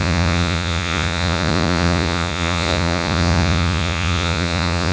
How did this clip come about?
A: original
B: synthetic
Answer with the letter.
B